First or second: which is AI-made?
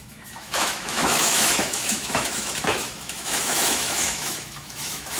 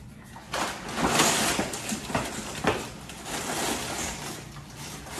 first